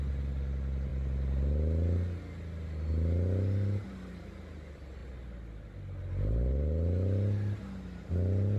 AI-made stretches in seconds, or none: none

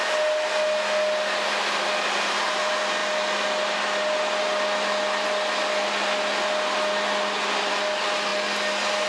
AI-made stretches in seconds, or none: none

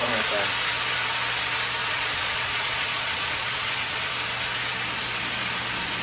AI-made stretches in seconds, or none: 1.8-4.1 (vocoder, Vocos)